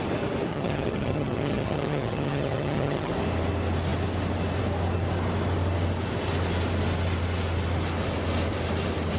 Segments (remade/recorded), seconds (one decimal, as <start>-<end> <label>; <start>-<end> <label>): 0.0-0.5 recorded; 0.5-3.1 remade; 3.1-9.2 recorded